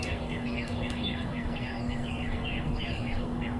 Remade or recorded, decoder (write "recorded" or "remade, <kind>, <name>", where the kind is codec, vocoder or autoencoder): remade, codec, SNAC